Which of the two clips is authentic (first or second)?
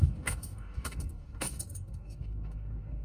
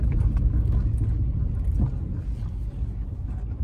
second